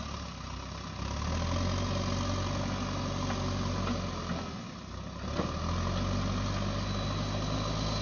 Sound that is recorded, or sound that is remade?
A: recorded